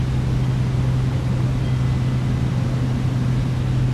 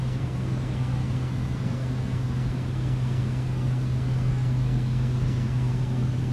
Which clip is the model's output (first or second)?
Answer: second